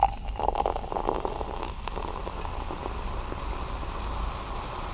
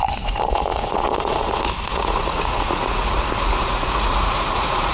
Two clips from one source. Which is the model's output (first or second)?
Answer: second